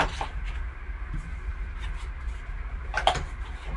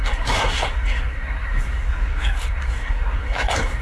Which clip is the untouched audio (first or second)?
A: first